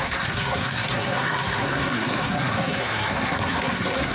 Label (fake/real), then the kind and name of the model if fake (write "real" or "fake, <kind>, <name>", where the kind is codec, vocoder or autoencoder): fake, codec, SNAC